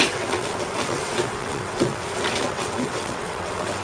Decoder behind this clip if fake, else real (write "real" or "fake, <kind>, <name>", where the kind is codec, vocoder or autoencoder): fake, vocoder, WaveNeXt